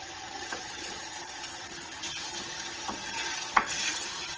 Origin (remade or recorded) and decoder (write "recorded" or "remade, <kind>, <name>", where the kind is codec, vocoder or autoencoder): remade, vocoder, HiFi-GAN